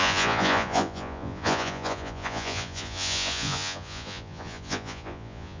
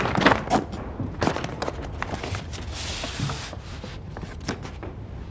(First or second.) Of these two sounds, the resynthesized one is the first